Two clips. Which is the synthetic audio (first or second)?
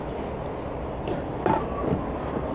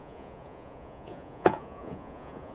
second